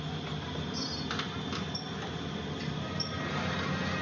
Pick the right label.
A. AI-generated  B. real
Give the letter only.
B